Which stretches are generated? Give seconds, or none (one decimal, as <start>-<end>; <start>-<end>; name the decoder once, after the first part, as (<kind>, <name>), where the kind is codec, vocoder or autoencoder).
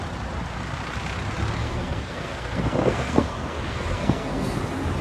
1.6-4.6 (codec, SNAC)